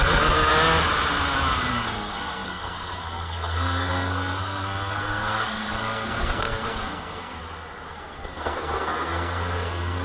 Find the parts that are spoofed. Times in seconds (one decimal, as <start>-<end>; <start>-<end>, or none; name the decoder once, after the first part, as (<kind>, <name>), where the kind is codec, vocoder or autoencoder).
0.0-0.5 (codec, SNAC); 1.7-7.4; 7.9-10.0

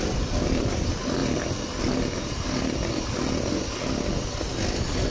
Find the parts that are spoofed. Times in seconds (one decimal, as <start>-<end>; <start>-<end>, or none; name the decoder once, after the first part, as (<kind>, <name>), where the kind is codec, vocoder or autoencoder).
none

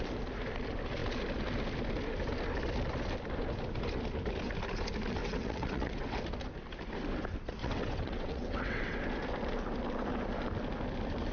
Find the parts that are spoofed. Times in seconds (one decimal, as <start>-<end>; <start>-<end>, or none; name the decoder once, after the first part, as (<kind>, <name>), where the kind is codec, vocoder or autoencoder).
5.2-6.2 (vocoder, WaveNeXt); 7.6-9.0

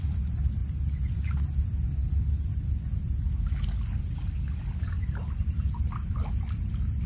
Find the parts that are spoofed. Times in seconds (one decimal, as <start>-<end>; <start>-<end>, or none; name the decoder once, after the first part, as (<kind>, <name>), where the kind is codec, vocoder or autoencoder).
none

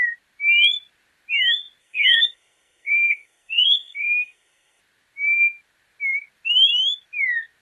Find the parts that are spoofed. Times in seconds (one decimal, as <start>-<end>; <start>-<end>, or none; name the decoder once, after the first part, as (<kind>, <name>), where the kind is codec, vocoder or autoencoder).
1.8-4.8 (codec, SNAC)

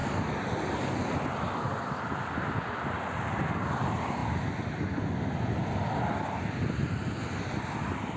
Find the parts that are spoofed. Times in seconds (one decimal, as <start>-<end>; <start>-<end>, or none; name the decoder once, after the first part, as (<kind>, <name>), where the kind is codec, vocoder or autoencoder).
none